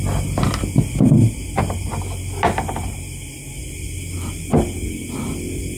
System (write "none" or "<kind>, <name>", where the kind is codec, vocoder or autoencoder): none